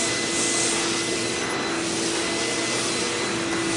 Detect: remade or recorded recorded